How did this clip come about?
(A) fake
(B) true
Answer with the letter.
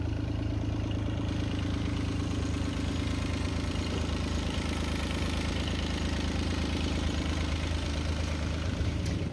A